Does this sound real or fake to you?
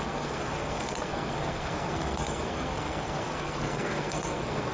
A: fake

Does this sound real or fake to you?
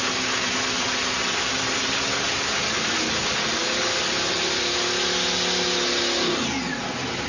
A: real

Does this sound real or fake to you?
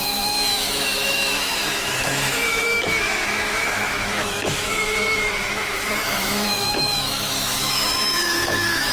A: fake